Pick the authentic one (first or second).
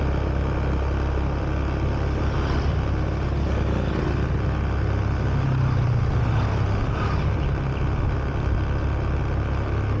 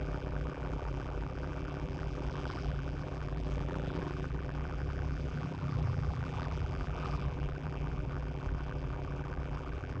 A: first